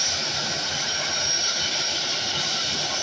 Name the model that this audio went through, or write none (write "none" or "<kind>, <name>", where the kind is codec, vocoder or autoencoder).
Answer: none